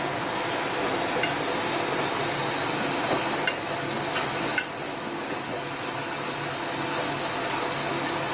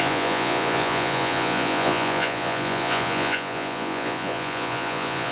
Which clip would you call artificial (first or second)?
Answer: second